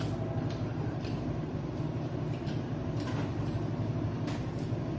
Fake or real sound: real